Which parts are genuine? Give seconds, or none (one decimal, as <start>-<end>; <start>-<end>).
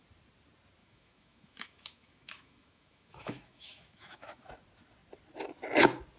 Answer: 0.0-0.8; 4.5-6.2